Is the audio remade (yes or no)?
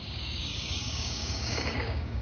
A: yes